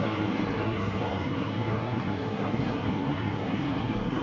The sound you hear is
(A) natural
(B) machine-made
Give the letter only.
B